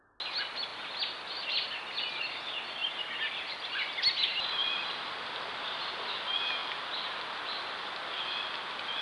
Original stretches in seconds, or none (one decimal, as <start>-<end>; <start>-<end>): 0.0-9.0